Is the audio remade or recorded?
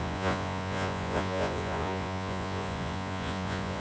remade